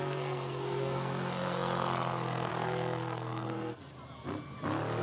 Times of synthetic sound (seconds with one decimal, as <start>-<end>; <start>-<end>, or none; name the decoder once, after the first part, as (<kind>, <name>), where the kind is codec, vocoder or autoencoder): 0.0-3.9 (codec, SNAC)